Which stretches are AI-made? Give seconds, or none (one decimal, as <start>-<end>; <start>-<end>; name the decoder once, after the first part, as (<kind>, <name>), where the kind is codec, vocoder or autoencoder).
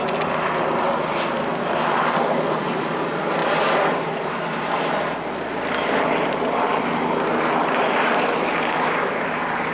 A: 3.4-5.2 (vocoder, BigVGAN v2)